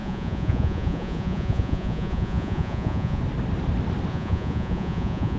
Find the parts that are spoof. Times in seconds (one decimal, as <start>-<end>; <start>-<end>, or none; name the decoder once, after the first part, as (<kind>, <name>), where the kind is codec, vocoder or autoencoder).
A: 0.0-3.2 (vocoder, Vocos); 4.1-5.4